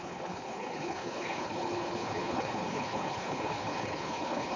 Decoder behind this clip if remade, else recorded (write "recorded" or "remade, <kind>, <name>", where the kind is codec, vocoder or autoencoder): remade, codec, HILCodec